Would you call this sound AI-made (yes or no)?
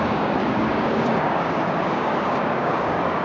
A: yes